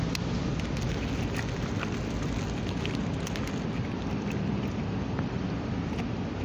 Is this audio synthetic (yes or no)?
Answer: no